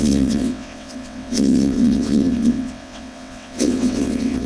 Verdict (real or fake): fake